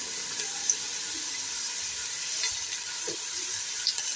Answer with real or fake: real